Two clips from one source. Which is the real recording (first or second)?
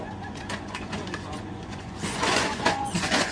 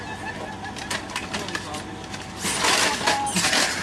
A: second